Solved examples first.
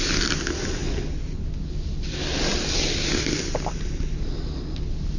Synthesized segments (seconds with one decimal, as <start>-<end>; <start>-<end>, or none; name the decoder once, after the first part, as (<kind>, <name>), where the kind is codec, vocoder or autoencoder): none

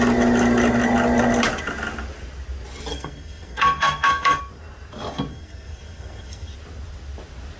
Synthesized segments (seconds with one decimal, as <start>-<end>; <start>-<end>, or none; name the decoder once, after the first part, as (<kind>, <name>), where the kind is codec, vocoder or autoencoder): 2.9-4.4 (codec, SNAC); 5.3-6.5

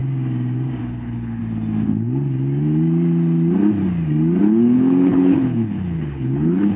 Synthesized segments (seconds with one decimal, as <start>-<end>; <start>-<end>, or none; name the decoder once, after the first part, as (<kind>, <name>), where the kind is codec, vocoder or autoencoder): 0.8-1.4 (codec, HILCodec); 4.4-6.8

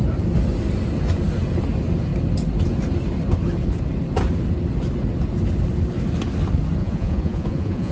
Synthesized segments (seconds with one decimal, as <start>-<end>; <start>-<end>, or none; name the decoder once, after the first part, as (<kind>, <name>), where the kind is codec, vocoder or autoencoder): 6.8-7.9 (vocoder, Vocos)

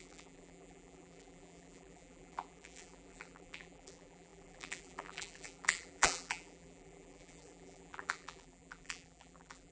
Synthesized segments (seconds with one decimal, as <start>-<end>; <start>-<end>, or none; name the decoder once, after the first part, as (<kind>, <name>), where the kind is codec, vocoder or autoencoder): 0.0-9.7 (vocoder, BigVGAN v2)

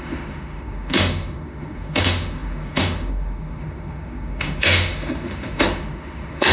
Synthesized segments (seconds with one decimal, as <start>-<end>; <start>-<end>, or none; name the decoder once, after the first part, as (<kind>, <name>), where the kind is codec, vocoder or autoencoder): 0.0-6.5 (autoencoder, DAC-VAE)